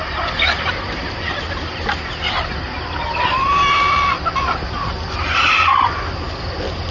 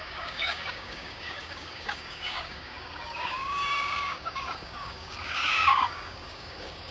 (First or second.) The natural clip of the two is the first